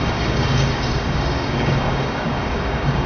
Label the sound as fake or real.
fake